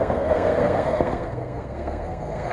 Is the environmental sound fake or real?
fake